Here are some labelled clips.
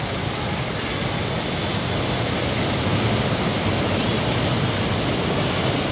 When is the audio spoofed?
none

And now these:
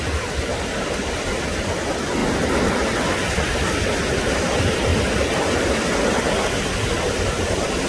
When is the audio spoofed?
0.7-1.2 (vocoder, BigVGAN v2)

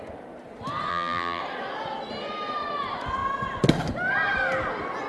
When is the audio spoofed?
0.9-1.4 (vocoder, BigVGAN v2)

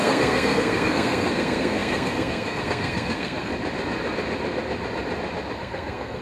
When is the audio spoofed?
0.0-3.5 (codec, SNAC); 5.6-6.2